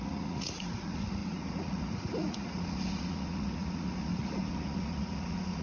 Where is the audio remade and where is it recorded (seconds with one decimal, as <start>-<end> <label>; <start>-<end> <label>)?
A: 0.0-5.6 remade